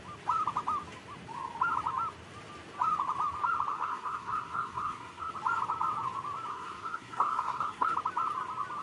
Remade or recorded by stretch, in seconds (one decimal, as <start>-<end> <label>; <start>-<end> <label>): 0.0-3.7 recorded; 3.7-5.3 remade; 5.3-6.5 recorded; 6.5-7.9 remade; 7.9-8.8 recorded